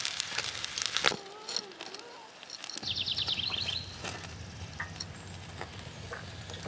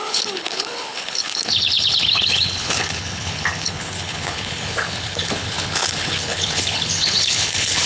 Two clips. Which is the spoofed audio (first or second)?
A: second